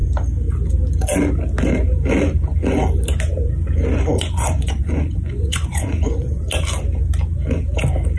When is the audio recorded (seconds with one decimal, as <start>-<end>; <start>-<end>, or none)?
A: 0.0-4.1; 6.4-8.2

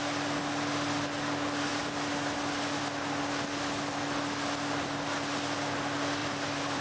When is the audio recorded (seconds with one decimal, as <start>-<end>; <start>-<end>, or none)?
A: 0.0-6.2